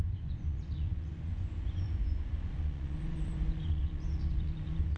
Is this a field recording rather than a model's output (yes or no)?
no